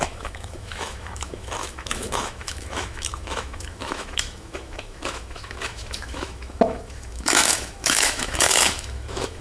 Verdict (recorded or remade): remade